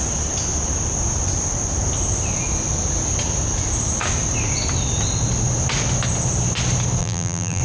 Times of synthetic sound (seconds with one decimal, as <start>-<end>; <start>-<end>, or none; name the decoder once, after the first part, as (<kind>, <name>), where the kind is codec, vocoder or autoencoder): 7.0-7.6 (vocoder, BigVGAN v2)